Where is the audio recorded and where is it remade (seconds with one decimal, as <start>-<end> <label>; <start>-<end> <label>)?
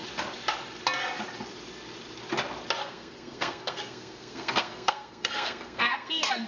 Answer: 0.0-2.8 recorded; 2.8-6.5 remade